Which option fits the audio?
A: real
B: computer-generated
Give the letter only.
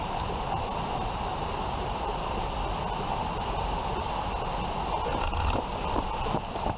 A